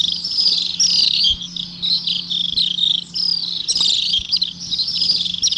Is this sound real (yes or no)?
yes